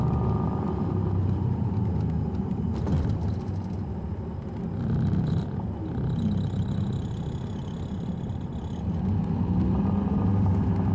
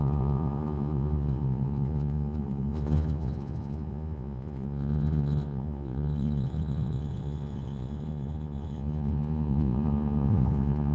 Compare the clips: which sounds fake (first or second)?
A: second